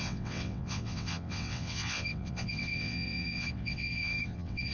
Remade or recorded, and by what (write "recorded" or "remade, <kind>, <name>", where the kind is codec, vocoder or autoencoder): remade, vocoder, WaveNeXt